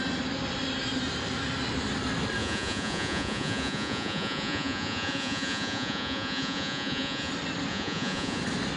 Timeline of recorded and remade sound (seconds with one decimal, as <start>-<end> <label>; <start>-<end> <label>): 0.0-2.4 recorded; 2.4-7.3 remade; 7.3-7.7 recorded; 7.7-8.4 remade; 8.4-8.8 recorded